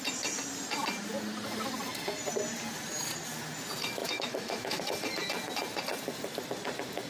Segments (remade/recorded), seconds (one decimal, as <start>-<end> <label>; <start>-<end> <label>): 0.0-4.0 recorded; 4.0-4.8 remade; 4.8-7.1 recorded